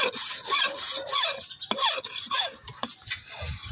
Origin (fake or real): real